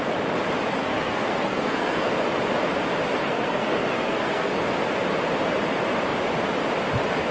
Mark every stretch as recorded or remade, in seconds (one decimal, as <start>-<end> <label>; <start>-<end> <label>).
0.0-0.8 recorded; 0.8-2.1 remade; 2.1-3.2 recorded; 3.2-4.5 remade; 4.5-7.3 recorded